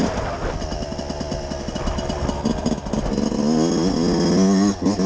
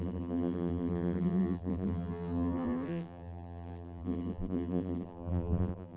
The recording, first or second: first